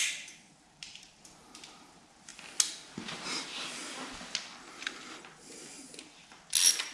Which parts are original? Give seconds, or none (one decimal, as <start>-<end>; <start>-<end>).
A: 2.3-3.0; 3.8-6.9